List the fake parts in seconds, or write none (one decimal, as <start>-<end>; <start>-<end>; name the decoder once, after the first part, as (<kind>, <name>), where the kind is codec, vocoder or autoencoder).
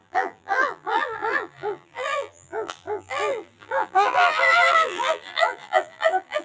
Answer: 0.0-6.4 (vocoder, BigVGAN v2)